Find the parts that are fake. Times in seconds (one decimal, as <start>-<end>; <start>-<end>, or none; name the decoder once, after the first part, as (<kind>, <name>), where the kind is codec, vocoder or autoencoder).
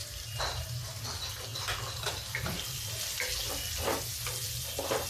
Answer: 0.0-0.9 (vocoder, BigVGAN v2); 1.5-2.8